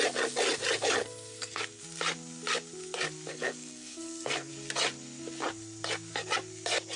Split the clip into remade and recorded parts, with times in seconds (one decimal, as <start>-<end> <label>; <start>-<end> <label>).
0.0-1.0 recorded; 1.0-1.8 remade; 1.8-3.3 recorded; 3.3-4.5 remade; 4.5-7.0 recorded